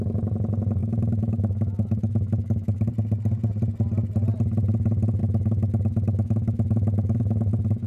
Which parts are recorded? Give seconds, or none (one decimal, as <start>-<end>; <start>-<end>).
0.0-0.8; 2.9-5.2; 7.5-7.9